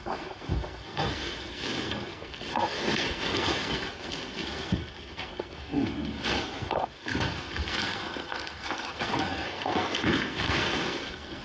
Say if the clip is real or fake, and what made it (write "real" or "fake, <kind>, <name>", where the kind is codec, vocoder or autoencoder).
fake, codec, SNAC